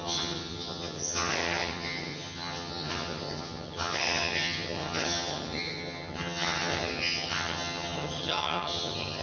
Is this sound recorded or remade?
remade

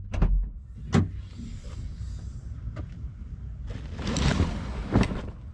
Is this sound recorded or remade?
recorded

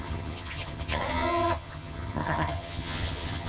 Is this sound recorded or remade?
remade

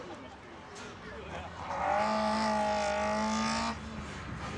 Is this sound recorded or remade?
recorded